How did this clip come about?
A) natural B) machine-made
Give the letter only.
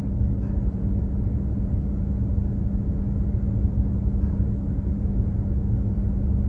A